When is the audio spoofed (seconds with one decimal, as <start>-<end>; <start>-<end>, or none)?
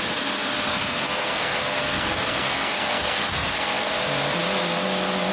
0.7-3.9